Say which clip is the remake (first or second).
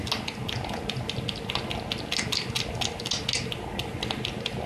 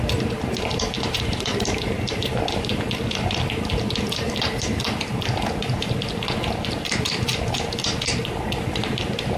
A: second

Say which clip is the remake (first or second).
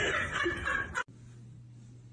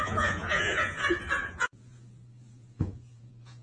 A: second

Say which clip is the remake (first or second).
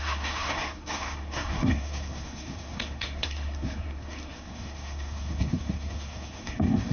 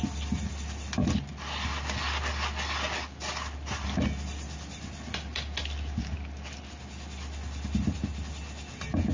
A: first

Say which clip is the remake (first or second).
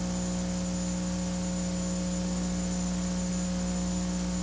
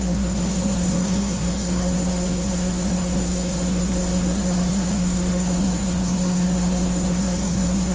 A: second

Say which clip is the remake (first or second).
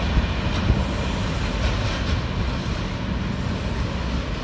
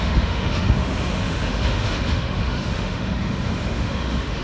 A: second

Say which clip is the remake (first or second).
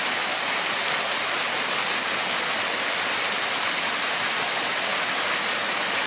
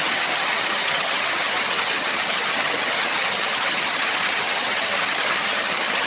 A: second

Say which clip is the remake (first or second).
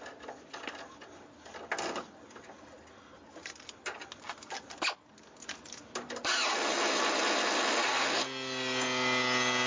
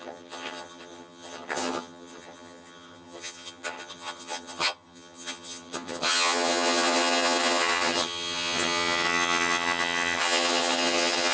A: second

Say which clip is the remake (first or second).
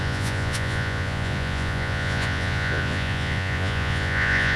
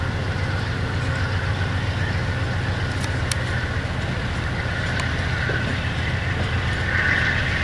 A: first